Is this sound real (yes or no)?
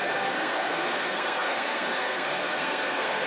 no